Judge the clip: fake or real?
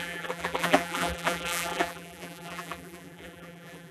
fake